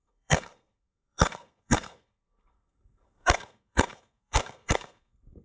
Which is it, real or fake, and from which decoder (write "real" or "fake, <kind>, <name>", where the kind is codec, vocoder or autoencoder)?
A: fake, codec, SNAC